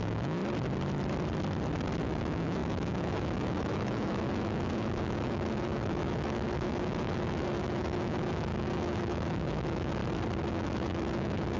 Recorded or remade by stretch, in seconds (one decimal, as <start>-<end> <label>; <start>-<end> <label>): 0.0-0.4 remade; 0.4-2.0 recorded; 2.0-10.0 remade; 10.0-10.5 recorded; 10.5-11.6 remade